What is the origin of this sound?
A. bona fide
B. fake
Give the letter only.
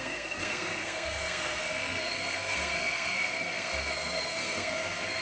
B